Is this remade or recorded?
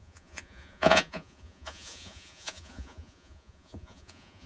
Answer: remade